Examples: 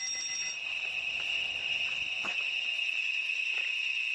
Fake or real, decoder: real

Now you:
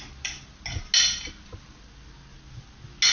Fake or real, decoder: real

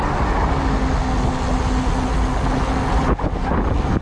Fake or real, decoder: real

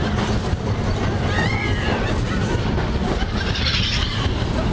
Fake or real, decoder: real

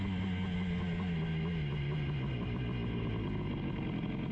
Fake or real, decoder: real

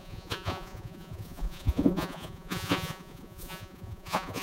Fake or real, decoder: fake, vocoder, Vocos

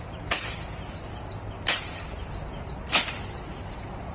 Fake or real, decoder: real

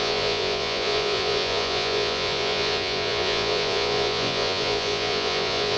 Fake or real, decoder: fake, vocoder, Vocos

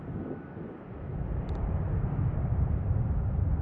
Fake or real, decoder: real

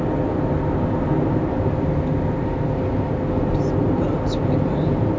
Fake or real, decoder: real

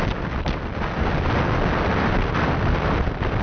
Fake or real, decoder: real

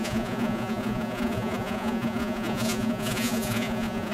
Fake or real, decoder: fake, vocoder, Vocos